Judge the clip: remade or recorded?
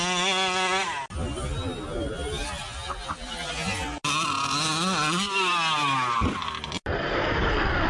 recorded